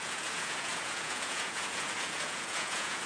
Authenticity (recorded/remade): remade